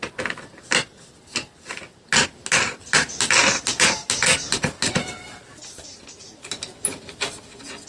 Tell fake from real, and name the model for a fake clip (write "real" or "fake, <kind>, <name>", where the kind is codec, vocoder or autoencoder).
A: real